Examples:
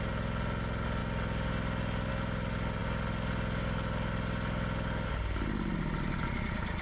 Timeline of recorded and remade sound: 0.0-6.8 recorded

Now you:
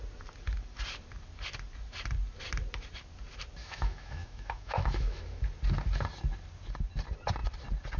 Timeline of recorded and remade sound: 0.0-3.6 recorded; 3.6-5.4 remade; 5.4-8.0 recorded